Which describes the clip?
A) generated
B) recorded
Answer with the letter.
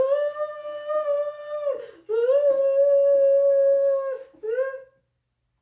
B